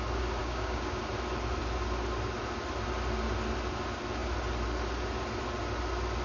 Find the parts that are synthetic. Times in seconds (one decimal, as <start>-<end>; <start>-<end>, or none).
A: 0.4-1.0